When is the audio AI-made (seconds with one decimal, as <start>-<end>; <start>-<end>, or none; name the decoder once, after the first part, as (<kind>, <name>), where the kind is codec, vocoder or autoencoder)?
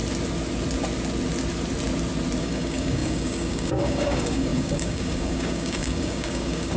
2.4-6.8 (codec, DAC)